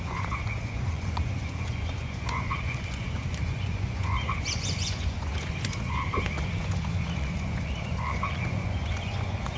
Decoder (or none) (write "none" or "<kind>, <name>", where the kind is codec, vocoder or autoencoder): vocoder, Vocos